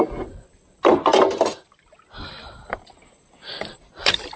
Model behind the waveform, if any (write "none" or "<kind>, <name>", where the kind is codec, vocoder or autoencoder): none